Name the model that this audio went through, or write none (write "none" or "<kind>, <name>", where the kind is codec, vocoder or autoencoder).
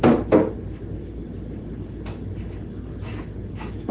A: none